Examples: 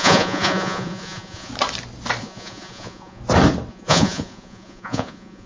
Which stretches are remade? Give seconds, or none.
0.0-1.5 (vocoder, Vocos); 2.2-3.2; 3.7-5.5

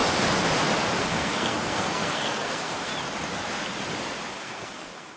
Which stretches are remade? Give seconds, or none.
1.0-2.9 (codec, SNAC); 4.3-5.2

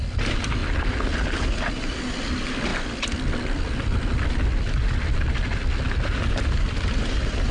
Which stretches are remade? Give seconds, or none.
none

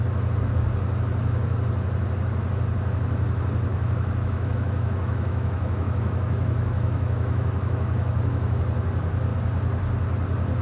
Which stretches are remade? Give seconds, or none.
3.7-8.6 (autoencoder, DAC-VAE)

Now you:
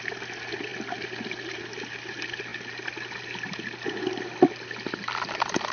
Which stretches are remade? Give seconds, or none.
none

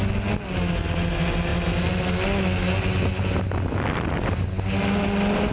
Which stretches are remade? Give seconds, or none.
none